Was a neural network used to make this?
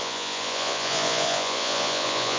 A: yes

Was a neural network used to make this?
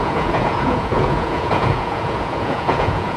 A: yes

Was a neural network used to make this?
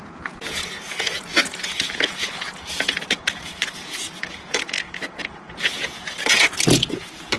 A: yes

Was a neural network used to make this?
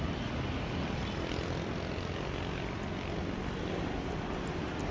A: no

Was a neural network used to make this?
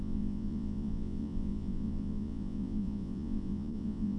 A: yes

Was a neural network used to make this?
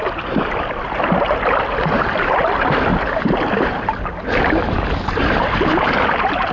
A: no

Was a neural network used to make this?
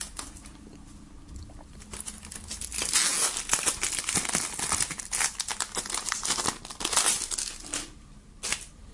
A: no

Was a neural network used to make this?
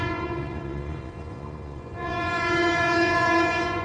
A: yes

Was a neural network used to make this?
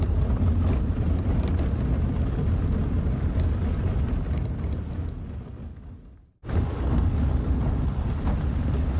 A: no